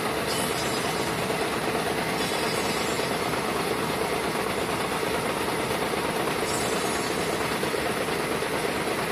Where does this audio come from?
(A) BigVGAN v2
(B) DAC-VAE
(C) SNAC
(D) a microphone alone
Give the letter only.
D